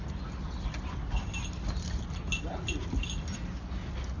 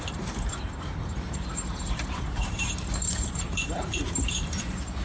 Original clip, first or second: first